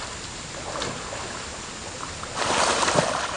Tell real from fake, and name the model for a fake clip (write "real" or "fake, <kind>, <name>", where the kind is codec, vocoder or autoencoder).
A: real